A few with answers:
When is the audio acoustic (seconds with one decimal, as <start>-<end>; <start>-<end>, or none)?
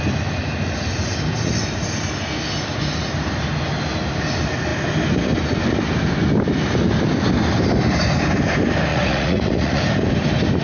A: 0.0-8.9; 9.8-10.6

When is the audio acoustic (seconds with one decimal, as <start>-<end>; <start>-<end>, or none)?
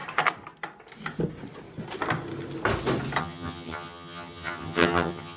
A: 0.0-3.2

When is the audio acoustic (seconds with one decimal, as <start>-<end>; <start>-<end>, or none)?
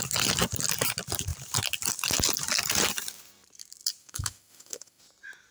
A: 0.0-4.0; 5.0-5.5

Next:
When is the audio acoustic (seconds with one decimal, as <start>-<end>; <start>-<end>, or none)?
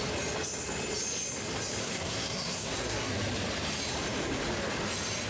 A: 0.0-1.8; 3.1-5.3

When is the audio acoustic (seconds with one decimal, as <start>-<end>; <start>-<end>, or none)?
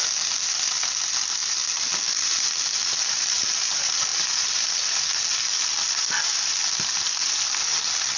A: 0.0-8.2